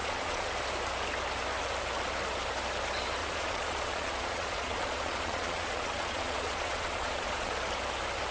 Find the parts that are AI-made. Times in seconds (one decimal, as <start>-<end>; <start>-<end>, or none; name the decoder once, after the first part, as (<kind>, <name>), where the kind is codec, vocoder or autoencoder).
0.0-0.5 (vocoder, Vocos); 3.2-7.5